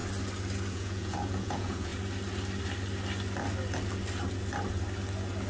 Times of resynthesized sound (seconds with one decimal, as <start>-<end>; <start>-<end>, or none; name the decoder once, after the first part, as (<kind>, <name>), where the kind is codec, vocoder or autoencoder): 0.7-1.9 (vocoder, Vocos)